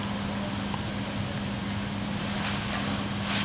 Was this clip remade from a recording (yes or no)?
no